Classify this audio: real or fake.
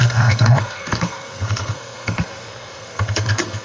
fake